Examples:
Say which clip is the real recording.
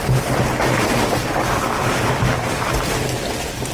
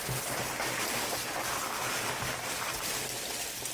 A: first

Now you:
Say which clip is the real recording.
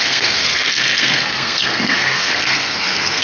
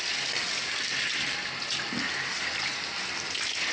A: second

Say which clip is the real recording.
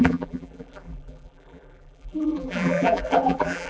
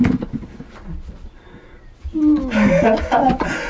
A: second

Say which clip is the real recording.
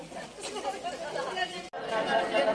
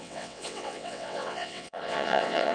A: first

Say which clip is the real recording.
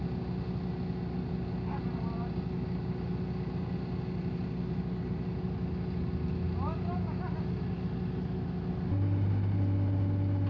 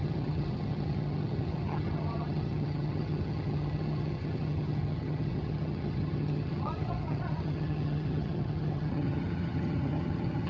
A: first